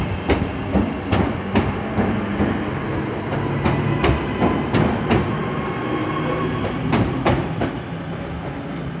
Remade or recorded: recorded